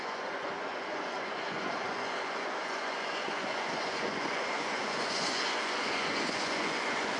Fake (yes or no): yes